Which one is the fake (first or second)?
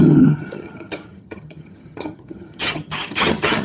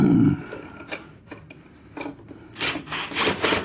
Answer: first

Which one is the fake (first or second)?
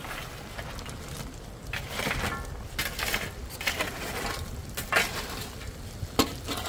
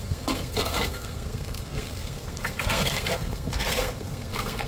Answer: second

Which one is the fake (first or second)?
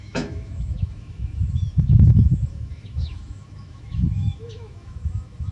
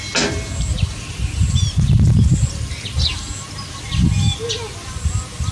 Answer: first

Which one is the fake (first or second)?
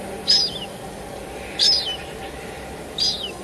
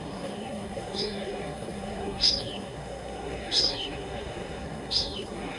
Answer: second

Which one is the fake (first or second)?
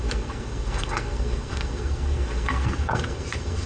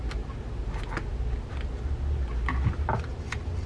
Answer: first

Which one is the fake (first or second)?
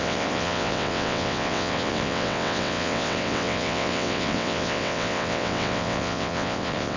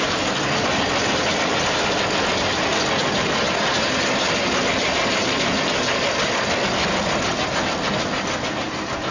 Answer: first